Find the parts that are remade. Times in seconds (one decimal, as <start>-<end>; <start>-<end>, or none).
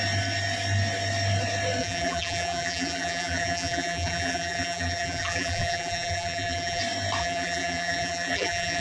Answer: 1.8-6.8; 7.2-8.8